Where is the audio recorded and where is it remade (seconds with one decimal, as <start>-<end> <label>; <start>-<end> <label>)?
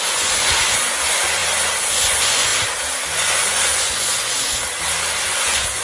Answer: 0.0-1.4 remade; 1.4-1.9 recorded; 1.9-2.5 remade; 2.5-3.1 recorded; 3.1-4.6 remade; 4.6-5.2 recorded; 5.2-5.8 remade